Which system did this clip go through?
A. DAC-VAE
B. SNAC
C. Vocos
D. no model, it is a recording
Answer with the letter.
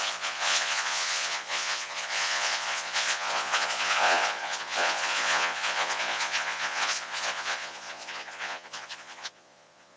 C